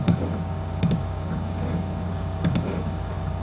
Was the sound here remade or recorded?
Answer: remade